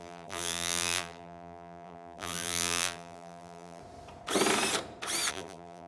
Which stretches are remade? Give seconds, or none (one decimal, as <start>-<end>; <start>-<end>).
0.0-3.8; 5.3-5.9